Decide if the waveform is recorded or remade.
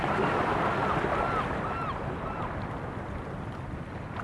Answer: recorded